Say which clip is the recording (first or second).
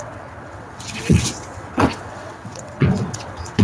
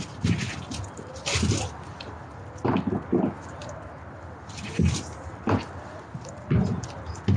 second